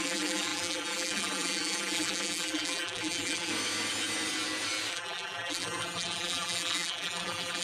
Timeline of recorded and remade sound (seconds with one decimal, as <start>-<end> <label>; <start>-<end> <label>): 0.0-3.5 remade; 3.5-4.9 recorded; 4.9-7.6 remade